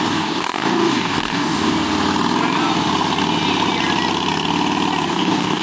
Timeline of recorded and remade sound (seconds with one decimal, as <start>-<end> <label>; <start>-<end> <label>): 0.0-1.7 remade; 1.7-5.1 recorded; 5.1-5.6 remade